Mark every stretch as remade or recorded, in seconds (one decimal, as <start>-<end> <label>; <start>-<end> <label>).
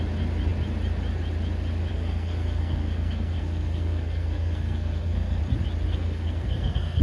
0.0-1.9 recorded; 1.9-5.4 remade; 5.4-5.9 recorded; 5.9-7.0 remade